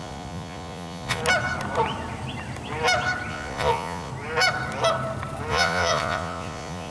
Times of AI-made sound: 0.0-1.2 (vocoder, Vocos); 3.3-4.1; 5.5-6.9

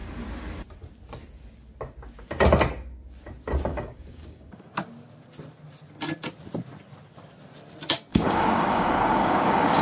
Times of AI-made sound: 3.7-4.7 (codec, DAC); 8.1-9.8

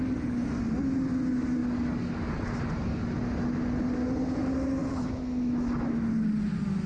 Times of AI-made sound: 4.8-5.9 (autoencoder, DAC-VAE)

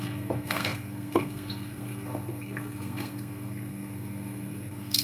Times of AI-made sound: 0.0-5.0 (codec, SNAC)

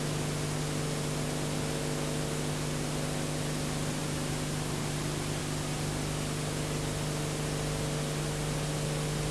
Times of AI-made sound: none